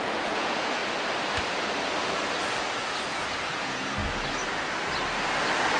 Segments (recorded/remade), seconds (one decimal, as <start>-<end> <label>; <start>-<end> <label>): 0.0-0.8 remade; 0.8-3.1 recorded; 3.1-4.0 remade; 4.0-5.8 recorded